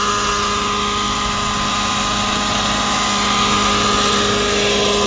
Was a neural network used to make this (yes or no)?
no